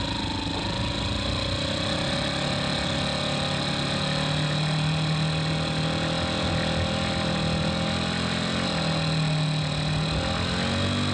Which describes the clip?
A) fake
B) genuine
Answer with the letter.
B